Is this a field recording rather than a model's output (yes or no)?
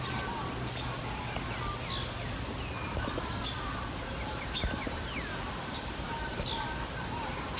yes